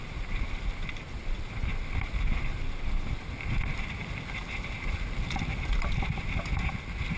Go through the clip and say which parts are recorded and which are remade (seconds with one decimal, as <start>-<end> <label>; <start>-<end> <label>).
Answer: 0.0-4.0 recorded; 4.0-5.7 remade; 5.7-7.2 recorded